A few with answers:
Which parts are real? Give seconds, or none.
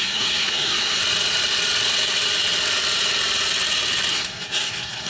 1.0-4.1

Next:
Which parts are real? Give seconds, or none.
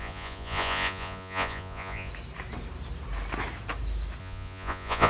2.1-4.2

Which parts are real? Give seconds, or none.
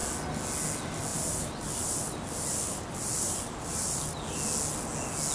0.0-1.1; 4.1-5.3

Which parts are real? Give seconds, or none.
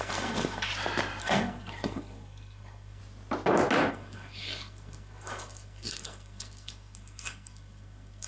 0.7-1.2; 3.0-3.9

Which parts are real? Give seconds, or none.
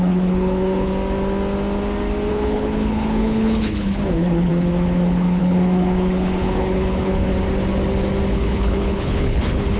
0.9-2.3; 7.3-8.3